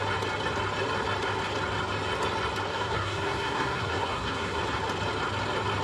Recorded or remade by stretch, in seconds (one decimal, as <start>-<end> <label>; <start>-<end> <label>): 0.0-2.7 recorded; 2.7-4.6 remade; 4.6-5.8 recorded